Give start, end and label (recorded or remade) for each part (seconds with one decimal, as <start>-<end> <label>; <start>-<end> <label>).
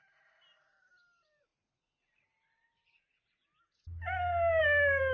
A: 0.0-5.1 recorded